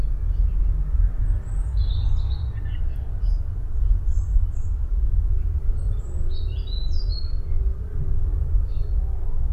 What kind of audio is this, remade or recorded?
recorded